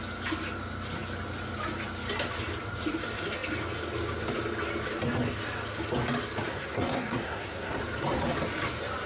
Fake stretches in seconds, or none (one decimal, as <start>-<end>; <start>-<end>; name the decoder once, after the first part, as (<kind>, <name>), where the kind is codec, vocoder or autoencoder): 6.5-7.8 (codec, SNAC)